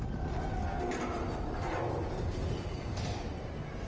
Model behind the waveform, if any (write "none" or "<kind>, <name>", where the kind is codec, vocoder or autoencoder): none